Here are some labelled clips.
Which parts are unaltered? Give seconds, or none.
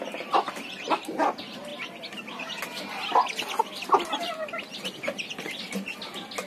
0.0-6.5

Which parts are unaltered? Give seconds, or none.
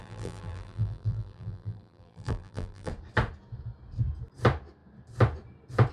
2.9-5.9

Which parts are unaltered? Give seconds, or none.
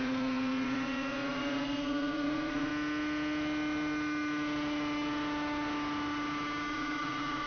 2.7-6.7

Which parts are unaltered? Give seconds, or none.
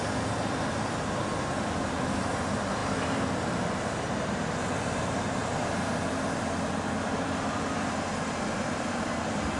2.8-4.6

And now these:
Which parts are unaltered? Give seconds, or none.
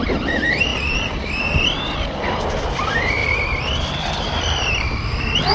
0.7-2.7; 3.2-3.9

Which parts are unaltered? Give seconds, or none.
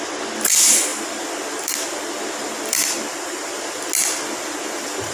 0.0-5.1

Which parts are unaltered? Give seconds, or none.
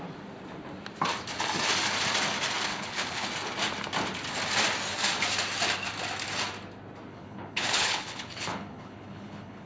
0.0-2.7; 3.3-7.1